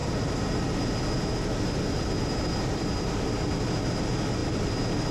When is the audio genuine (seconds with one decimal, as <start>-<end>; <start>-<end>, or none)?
0.0-1.9; 2.8-5.1